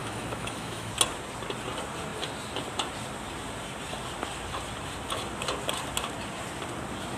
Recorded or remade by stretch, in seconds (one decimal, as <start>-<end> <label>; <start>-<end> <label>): 0.0-0.9 remade; 0.9-7.2 recorded